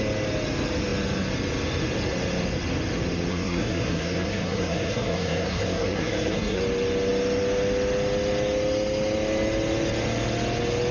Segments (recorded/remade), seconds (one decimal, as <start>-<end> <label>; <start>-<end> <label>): 0.0-3.3 recorded; 3.3-6.6 remade; 6.6-10.9 recorded